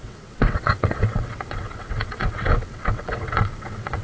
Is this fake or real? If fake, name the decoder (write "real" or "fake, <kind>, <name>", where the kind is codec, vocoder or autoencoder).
fake, vocoder, WaveNeXt